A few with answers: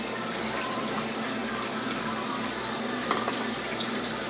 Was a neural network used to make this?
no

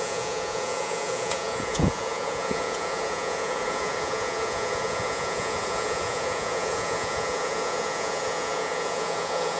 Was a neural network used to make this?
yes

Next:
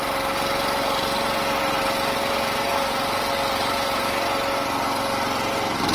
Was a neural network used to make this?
no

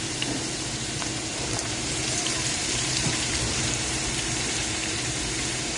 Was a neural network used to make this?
yes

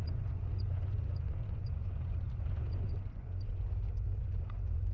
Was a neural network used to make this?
yes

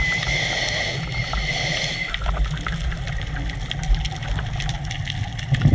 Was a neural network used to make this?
no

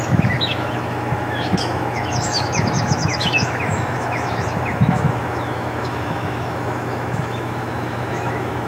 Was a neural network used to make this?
yes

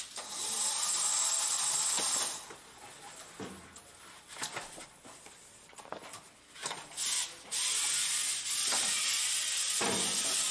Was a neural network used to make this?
no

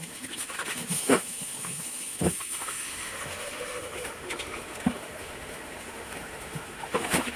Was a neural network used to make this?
yes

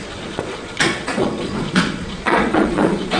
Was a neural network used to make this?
yes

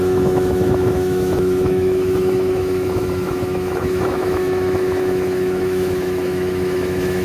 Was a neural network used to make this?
yes